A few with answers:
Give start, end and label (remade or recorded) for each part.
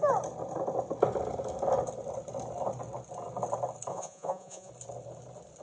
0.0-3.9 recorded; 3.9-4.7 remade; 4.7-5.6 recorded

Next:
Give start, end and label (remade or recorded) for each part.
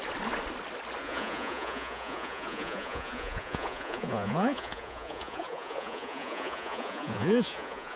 0.0-1.0 recorded; 1.0-8.0 remade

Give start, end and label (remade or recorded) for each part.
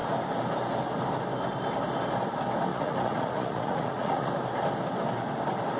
0.0-2.7 recorded; 2.7-4.3 remade; 4.3-5.8 recorded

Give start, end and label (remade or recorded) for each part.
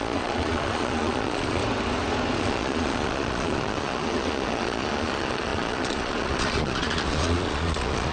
0.0-1.6 remade; 1.6-2.4 recorded; 2.4-8.1 remade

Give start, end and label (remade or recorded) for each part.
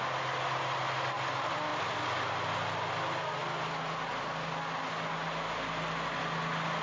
0.0-6.8 recorded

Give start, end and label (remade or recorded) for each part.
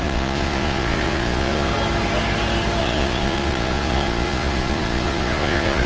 0.0-1.7 remade; 1.7-2.8 recorded; 2.8-5.9 remade